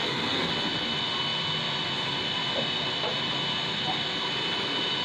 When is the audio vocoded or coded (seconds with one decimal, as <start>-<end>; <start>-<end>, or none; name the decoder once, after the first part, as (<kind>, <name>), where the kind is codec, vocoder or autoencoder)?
0.0-0.5 (codec, SNAC)